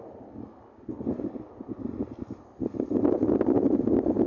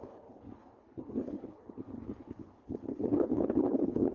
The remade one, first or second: second